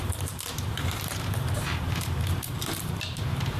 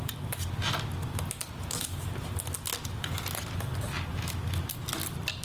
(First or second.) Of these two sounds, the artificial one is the first